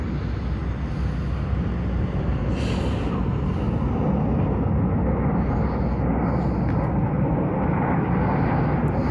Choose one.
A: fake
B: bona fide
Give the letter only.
B